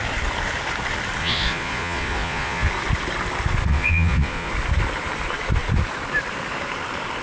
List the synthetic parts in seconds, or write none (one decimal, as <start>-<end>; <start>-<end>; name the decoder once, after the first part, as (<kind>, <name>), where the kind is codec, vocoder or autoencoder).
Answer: 1.2-2.7 (vocoder, Vocos); 3.7-4.5